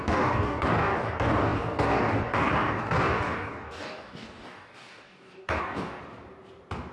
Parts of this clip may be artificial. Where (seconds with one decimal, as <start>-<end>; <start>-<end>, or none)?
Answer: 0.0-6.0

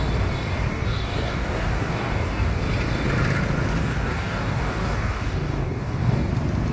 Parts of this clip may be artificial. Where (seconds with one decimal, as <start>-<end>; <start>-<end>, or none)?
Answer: 0.7-2.6; 3.8-6.3

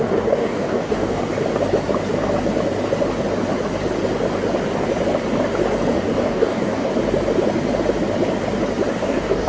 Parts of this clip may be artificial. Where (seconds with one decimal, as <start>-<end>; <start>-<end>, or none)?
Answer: 0.0-1.2; 5.9-6.9; 8.9-9.5

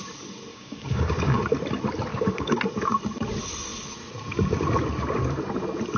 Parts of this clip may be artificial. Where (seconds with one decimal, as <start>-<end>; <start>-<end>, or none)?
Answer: 0.5-1.4; 2.1-2.6

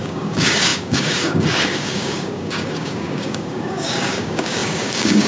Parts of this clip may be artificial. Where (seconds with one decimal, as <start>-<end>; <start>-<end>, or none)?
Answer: 0.0-5.3

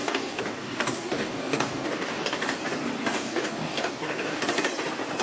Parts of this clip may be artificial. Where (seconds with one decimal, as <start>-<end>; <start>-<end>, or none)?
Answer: 0.0-2.6; 3.1-4.4

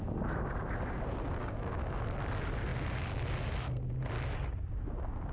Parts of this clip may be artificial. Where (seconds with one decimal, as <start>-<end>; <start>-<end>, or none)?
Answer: 1.4-2.0

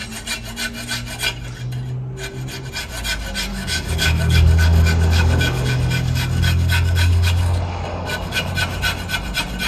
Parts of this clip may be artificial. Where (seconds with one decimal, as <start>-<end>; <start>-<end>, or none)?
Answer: 3.5-8.5